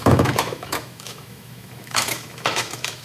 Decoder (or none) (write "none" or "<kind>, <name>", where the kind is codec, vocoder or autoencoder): autoencoder, DAC-VAE